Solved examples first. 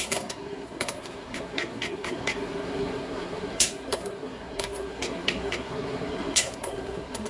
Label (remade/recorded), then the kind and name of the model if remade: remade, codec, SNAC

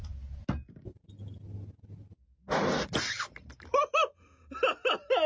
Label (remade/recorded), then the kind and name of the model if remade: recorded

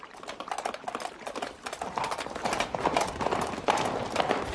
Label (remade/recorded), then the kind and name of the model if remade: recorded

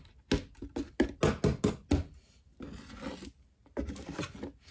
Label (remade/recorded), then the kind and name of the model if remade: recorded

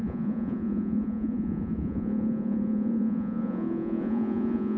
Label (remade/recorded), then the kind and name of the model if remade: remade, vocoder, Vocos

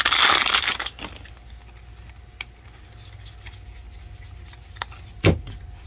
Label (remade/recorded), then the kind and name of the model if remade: recorded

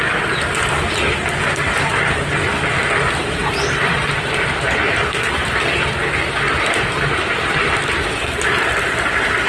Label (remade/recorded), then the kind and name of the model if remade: recorded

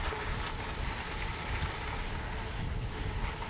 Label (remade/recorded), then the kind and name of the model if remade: recorded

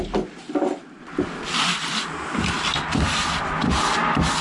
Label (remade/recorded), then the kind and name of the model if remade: recorded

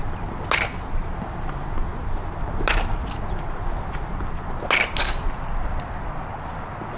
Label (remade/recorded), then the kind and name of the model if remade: recorded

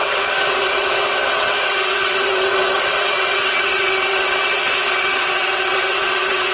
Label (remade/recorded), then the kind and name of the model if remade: remade, vocoder, WaveNeXt